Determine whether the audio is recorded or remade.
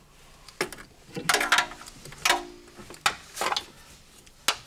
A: recorded